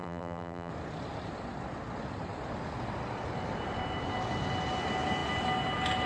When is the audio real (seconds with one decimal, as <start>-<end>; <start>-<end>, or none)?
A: 0.7-6.1